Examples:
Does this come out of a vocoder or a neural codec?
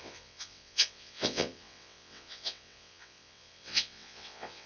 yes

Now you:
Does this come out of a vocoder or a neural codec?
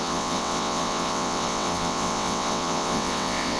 yes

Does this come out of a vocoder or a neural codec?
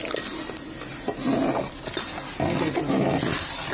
no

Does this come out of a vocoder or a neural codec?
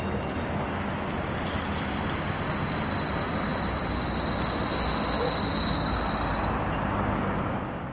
no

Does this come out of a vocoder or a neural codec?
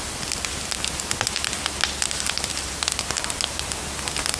no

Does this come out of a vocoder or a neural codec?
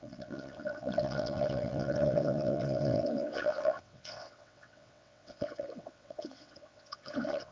yes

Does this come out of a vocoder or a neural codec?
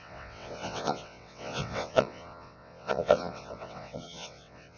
yes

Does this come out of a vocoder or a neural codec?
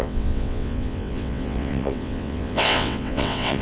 yes